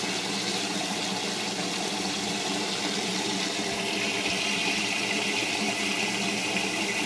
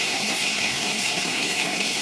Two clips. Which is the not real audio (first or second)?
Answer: second